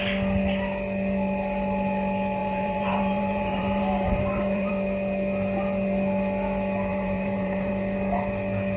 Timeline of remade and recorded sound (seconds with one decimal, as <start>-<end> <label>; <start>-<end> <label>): 0.0-2.4 recorded; 2.4-4.7 remade; 4.7-6.9 recorded; 6.9-7.7 remade; 7.7-8.8 recorded